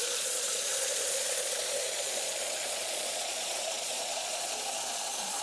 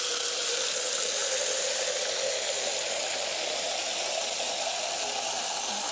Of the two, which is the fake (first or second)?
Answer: first